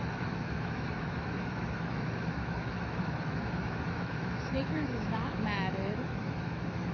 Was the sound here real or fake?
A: fake